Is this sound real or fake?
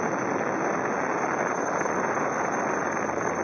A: real